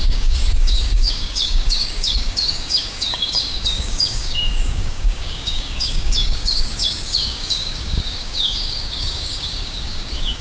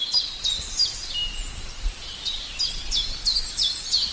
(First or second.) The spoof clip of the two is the first